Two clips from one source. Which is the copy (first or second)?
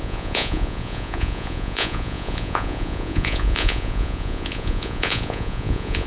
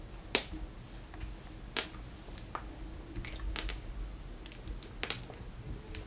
first